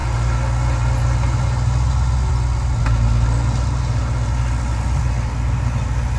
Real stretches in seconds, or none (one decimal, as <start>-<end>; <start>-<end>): 0.0-6.2